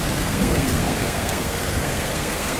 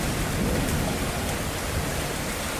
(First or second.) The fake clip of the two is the first